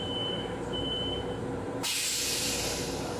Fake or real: fake